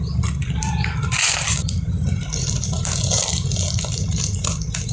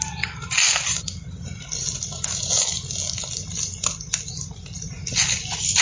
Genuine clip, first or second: second